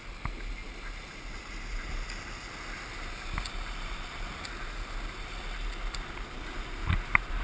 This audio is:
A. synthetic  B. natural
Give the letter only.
B